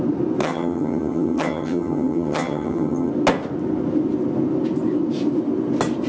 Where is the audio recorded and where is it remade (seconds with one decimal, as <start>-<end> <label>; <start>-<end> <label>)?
0.0-0.4 recorded; 0.4-3.1 remade; 3.1-6.1 recorded